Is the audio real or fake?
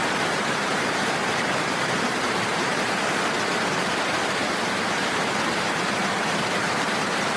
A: fake